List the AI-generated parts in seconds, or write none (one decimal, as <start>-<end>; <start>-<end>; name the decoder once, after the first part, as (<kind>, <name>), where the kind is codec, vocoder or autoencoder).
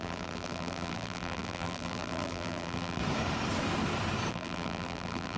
0.0-3.0 (vocoder, BigVGAN v2); 4.3-5.4